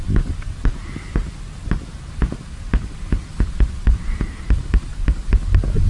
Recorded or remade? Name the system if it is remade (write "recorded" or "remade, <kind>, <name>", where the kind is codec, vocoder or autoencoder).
recorded